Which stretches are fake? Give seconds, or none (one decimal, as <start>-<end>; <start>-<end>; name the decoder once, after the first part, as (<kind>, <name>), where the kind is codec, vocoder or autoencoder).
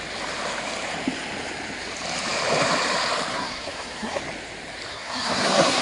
3.3-4.2 (codec, SNAC); 4.9-5.8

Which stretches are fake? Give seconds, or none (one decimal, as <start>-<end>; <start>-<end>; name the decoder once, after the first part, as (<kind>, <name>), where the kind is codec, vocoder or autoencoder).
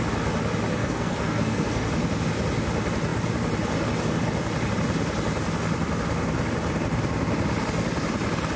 0.7-1.9 (codec, SNAC)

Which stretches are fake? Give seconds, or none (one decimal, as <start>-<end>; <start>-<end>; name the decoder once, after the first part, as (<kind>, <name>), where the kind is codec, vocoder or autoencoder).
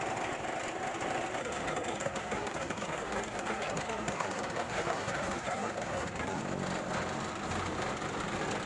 1.4-6.4 (codec, SNAC)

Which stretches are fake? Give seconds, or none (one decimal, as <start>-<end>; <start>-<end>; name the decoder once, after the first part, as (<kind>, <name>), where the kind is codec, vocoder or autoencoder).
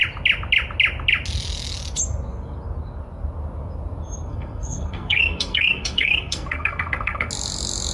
4.3-7.3 (codec, SNAC)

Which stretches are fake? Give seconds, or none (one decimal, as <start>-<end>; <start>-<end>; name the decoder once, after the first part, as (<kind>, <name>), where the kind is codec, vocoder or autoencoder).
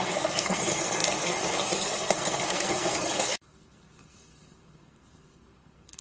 0.0-6.0 (codec, SNAC)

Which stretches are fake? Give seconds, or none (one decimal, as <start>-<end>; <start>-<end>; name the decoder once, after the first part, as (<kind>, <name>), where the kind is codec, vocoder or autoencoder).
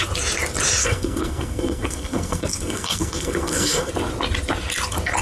0.8-3.9 (codec, SNAC)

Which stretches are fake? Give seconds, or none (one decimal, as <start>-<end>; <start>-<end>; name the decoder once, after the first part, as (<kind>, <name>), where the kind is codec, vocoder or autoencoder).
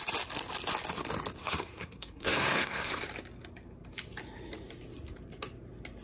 1.4-3.0 (codec, SNAC)